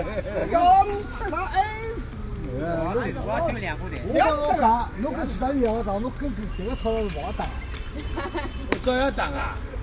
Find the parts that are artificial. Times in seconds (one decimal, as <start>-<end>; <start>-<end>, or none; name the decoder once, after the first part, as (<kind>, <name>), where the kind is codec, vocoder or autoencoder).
0.4-1.3 (vocoder, BigVGAN v2)